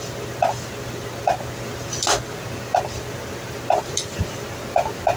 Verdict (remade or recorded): recorded